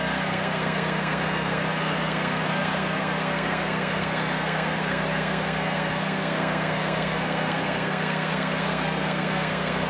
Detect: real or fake fake